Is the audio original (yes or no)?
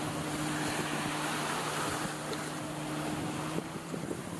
yes